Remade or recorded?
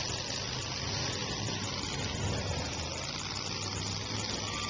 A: recorded